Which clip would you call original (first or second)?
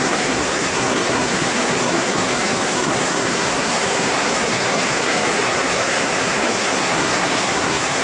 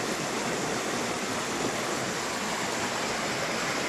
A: second